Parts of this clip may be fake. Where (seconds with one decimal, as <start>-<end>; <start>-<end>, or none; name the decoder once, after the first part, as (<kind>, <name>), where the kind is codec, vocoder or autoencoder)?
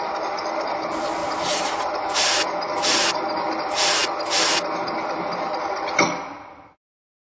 1.2-1.7 (vocoder, BigVGAN v2)